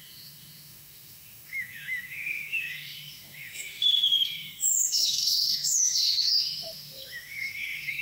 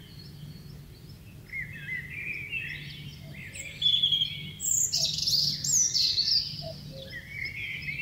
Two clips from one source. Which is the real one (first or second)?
second